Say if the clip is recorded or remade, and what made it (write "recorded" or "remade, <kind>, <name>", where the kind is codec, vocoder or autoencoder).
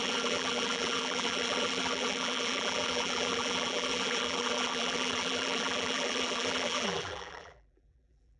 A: remade, vocoder, BigVGAN v2